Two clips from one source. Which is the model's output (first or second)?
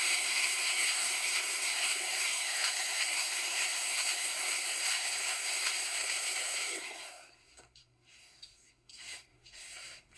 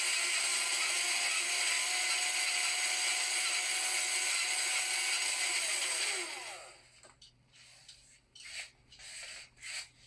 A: first